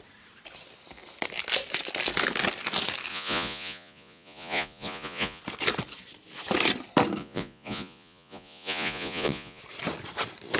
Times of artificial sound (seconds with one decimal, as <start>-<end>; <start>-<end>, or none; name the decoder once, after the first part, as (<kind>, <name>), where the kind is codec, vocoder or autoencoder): 3.1-5.4 (vocoder, Vocos); 7.2-9.6